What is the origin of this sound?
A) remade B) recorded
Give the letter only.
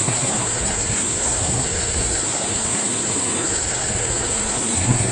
A